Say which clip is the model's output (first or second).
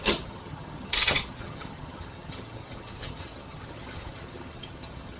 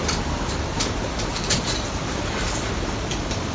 first